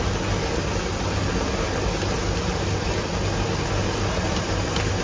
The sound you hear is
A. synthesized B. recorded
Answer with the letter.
B